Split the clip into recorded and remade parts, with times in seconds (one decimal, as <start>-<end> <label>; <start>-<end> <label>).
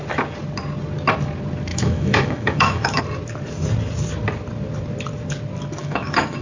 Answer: 0.0-1.7 recorded; 1.7-3.0 remade; 3.0-5.8 recorded; 5.8-6.4 remade